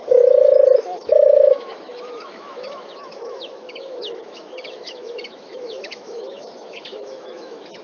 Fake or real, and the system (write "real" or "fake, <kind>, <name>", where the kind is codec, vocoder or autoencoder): fake, autoencoder, DAC-VAE